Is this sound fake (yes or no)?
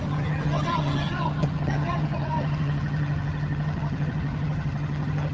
yes